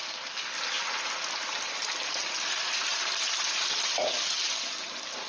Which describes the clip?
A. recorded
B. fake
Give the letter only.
A